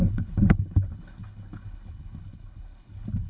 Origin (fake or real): fake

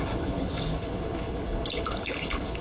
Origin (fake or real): fake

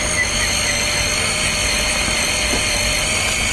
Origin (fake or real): real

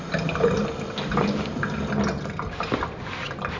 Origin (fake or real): real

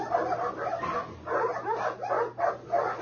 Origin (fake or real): real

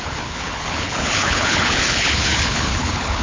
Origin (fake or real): fake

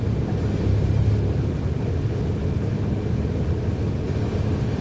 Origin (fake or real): real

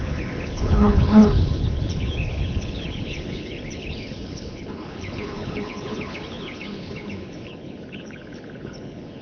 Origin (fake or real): fake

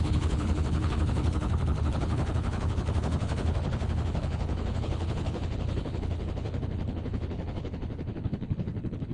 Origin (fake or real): fake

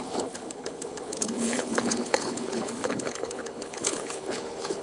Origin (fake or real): fake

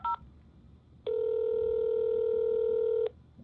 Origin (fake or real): real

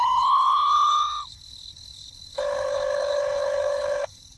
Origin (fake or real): fake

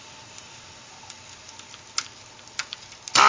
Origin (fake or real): real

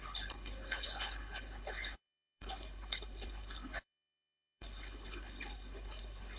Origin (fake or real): fake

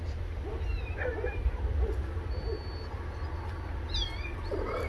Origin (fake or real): real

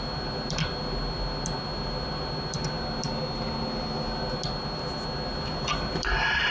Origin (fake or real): real